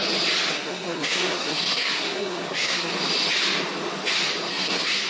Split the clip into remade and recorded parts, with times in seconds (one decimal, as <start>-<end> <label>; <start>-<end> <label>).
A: 0.0-0.5 recorded; 0.5-2.9 remade; 2.9-4.5 recorded; 4.5-5.1 remade